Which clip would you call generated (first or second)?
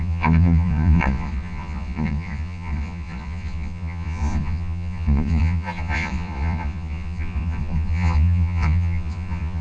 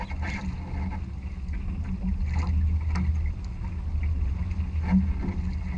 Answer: first